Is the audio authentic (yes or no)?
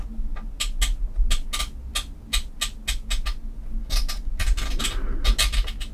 yes